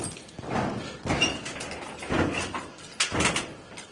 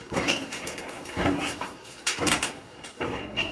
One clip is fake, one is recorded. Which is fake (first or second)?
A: second